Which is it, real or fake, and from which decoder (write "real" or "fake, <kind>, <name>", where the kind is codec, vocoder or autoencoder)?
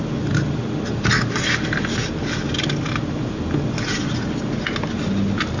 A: real